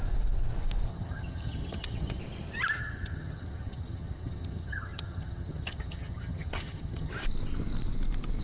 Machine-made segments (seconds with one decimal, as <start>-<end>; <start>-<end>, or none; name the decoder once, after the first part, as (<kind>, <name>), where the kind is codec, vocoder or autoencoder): 0.9-2.2 (vocoder, HiFi-GAN); 2.8-7.1